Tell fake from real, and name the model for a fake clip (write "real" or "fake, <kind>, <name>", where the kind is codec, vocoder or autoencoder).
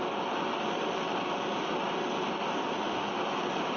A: real